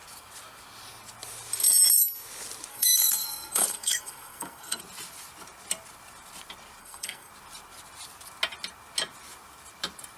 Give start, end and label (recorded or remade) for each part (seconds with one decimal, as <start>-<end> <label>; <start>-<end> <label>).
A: 0.0-2.7 recorded; 2.7-4.8 remade; 4.8-6.8 recorded; 6.8-7.3 remade; 7.3-10.2 recorded